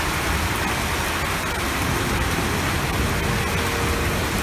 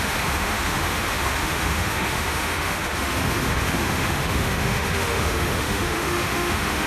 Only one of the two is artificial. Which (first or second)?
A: second